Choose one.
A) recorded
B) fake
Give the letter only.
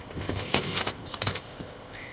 B